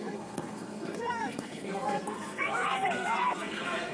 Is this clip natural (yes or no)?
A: no